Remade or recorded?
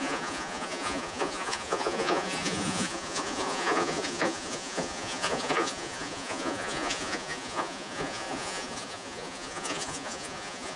remade